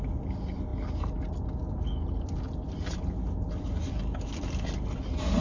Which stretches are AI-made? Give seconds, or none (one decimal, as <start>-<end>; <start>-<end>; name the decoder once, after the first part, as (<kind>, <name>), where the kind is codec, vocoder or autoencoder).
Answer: none